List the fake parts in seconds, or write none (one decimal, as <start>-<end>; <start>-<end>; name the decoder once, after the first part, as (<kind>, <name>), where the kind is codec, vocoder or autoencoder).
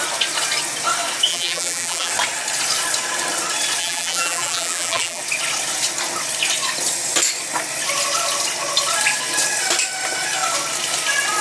1.3-2.1 (vocoder, BigVGAN v2); 3.8-5.2